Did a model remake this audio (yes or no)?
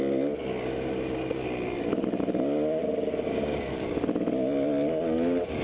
no